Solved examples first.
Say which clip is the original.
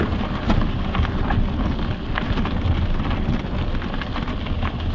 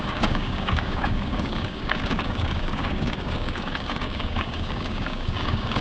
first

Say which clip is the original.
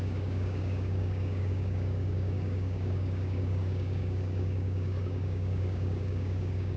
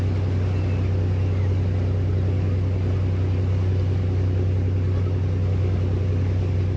second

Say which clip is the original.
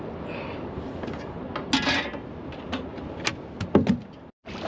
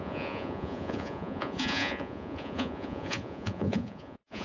first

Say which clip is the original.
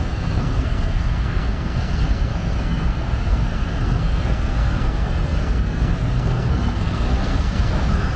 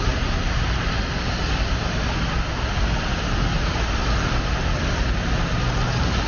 second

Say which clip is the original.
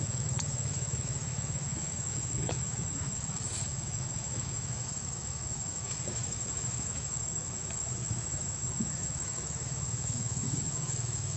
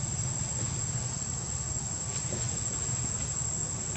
second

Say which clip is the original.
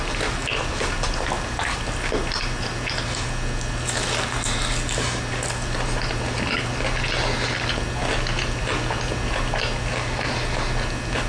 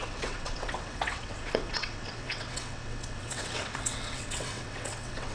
first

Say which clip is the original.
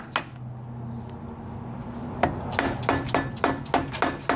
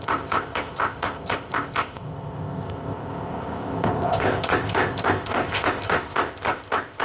first